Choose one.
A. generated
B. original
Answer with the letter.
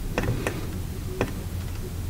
B